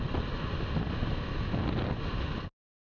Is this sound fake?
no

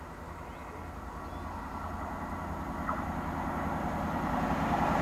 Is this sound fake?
no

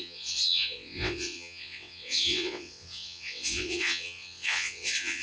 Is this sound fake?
yes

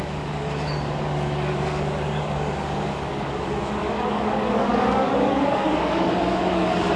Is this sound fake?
yes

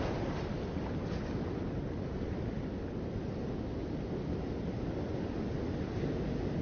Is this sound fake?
no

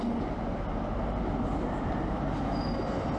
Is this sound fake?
no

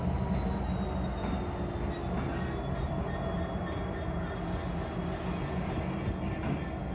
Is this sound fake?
no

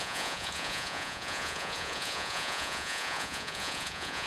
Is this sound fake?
yes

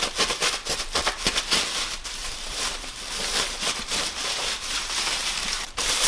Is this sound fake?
yes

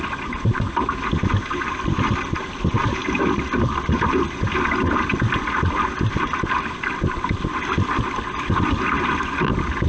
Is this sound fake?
no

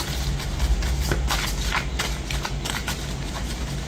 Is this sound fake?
no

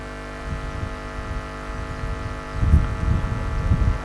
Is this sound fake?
no